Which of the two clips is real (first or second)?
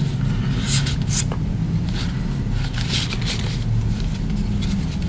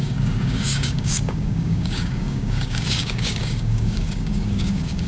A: first